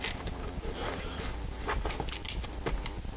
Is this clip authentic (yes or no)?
yes